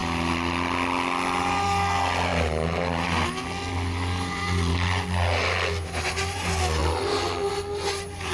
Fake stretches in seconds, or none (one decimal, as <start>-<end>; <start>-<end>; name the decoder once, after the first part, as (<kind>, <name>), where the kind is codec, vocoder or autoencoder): none